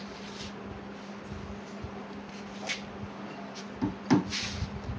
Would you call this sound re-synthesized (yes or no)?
no